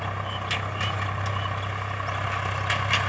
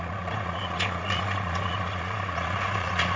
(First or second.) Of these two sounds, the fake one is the second